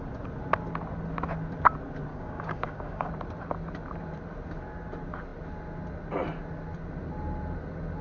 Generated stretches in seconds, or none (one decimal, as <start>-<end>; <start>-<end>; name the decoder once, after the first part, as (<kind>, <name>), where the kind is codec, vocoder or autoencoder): 2.1-3.1 (codec, DAC)